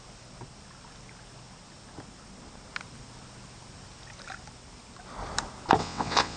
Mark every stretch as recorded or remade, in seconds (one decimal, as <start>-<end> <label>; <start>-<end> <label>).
0.0-5.8 recorded; 5.8-6.4 remade